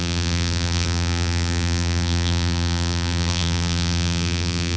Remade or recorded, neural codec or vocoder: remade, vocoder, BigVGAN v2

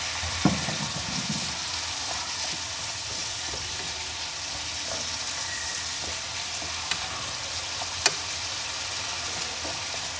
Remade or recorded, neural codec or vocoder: recorded